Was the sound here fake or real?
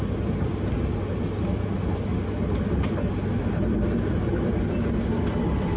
real